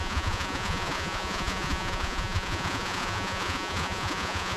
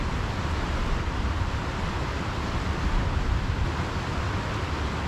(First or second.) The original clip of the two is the second